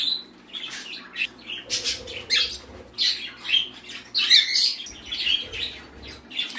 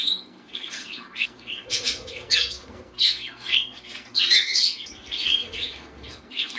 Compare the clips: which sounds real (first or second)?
first